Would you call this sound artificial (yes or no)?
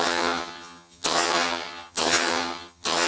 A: yes